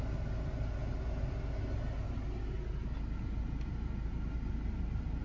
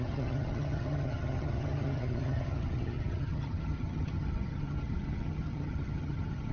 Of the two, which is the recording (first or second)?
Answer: first